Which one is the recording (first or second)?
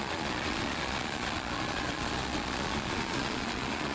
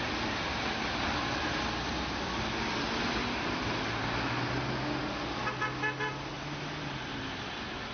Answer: second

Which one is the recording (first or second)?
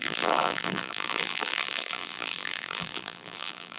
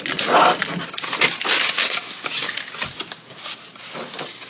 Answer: second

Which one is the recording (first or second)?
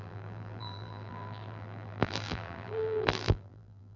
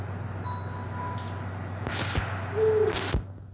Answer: second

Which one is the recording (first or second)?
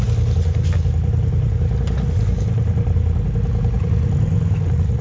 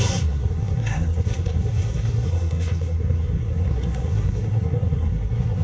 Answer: first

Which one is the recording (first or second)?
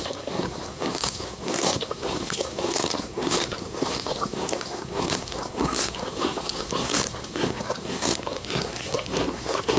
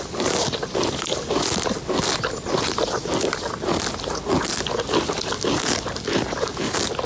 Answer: second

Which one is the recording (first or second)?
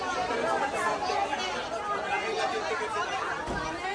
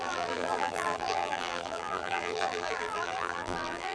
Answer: first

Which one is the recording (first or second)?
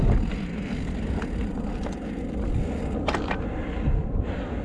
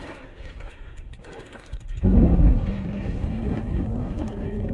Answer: first